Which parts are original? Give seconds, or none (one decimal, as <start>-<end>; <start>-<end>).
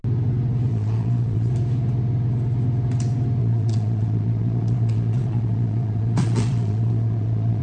0.0-0.7; 1.5-3.4